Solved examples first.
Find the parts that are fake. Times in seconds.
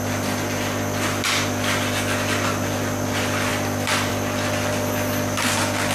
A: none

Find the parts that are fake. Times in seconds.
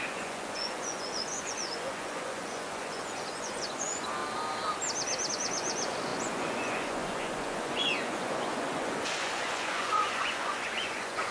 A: 0.0-4.2 (vocoder, Vocos); 5.3-11.3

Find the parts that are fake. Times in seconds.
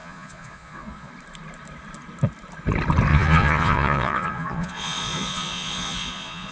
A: 0.0-1.1 (vocoder, Vocos); 3.1-6.5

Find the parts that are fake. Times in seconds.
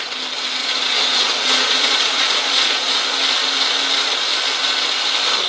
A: 0.6-3.0 (vocoder, Vocos)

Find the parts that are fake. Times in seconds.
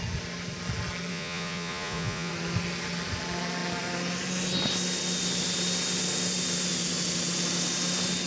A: 1.1-2.3 (vocoder, Vocos)